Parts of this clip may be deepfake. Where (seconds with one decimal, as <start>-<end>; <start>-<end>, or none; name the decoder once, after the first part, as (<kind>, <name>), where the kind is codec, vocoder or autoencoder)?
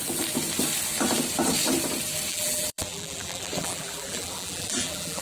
2.3-5.2 (vocoder, BigVGAN v2)